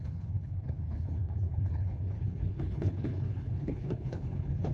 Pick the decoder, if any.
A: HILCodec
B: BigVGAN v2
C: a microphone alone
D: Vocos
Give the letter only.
A